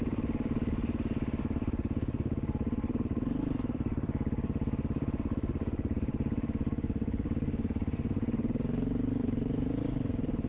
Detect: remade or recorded remade